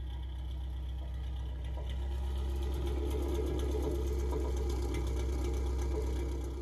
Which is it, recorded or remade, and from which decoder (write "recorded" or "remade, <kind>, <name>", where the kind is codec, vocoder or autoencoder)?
recorded